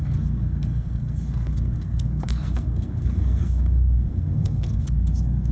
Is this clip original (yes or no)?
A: no